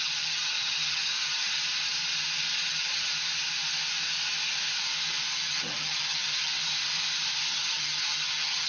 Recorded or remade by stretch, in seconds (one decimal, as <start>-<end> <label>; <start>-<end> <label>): 0.0-1.5 remade; 1.5-2.7 recorded; 2.7-3.1 remade; 3.1-5.5 recorded; 5.5-6.5 remade; 6.5-7.6 recorded; 7.6-8.7 remade